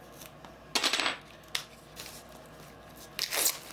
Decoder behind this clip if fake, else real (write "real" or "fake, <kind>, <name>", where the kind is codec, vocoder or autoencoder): real